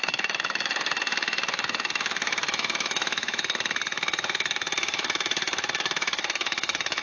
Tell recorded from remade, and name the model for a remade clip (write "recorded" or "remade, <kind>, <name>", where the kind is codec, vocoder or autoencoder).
remade, autoencoder, DAC-VAE